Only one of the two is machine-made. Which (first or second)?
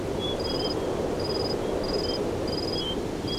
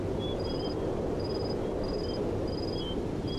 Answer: first